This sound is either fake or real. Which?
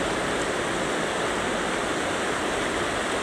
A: real